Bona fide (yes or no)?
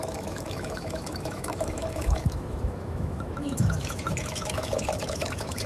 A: no